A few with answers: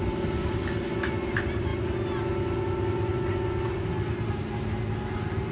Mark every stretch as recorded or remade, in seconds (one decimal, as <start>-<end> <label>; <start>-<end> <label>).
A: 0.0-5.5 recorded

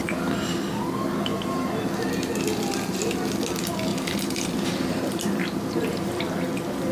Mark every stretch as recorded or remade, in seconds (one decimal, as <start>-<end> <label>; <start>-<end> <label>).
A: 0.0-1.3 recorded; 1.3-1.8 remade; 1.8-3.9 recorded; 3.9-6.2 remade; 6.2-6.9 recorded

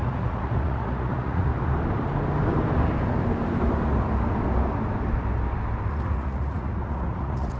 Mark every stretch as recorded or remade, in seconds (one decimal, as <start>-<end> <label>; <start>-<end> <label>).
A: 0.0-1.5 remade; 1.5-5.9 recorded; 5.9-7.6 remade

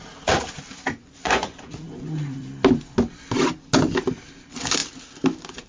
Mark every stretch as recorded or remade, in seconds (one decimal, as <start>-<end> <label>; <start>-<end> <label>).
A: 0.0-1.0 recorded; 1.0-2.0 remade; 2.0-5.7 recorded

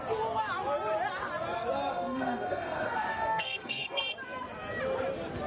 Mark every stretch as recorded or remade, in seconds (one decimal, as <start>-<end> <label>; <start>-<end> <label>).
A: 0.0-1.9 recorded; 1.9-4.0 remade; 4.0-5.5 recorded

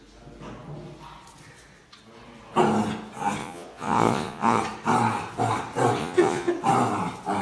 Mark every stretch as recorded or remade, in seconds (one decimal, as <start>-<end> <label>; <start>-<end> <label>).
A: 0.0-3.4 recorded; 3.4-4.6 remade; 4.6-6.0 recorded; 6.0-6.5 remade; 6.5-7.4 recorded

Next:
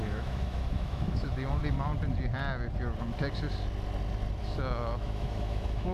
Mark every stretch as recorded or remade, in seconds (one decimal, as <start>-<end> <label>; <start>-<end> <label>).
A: 0.0-1.6 remade; 1.6-4.4 recorded; 4.4-5.9 remade

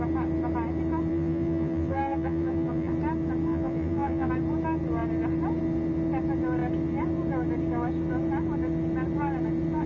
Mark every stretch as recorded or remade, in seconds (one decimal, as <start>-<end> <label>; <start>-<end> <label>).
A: 0.0-1.1 recorded; 1.1-2.9 remade; 2.9-3.5 recorded; 3.5-4.3 remade; 4.3-9.9 recorded